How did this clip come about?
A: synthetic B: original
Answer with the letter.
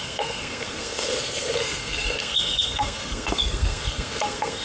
A